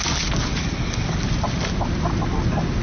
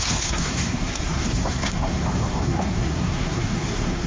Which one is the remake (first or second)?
second